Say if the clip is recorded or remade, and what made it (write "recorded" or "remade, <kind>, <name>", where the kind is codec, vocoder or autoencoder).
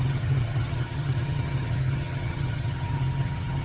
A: remade, vocoder, HiFi-GAN